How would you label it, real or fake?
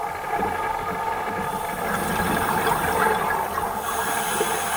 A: real